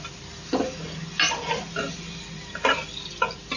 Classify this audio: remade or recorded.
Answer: recorded